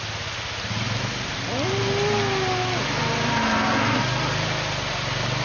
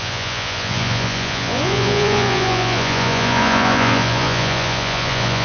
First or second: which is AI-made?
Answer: second